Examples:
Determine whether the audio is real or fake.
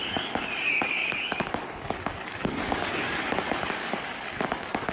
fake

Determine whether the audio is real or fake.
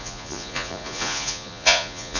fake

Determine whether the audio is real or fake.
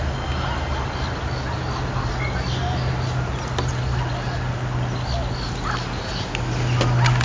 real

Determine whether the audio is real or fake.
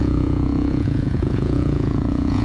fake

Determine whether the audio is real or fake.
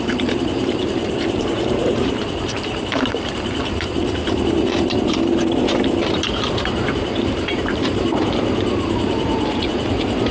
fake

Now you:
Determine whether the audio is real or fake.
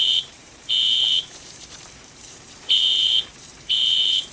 fake